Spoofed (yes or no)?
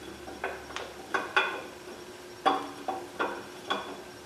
no